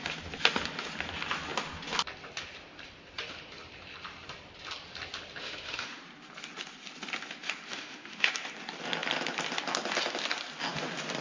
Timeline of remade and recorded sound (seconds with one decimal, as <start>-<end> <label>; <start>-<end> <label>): 0.0-5.4 recorded; 5.4-6.0 remade; 6.0-7.7 recorded; 7.7-8.3 remade; 8.3-11.2 recorded